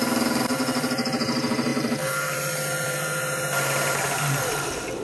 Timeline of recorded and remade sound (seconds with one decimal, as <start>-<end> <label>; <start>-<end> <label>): 0.0-5.0 remade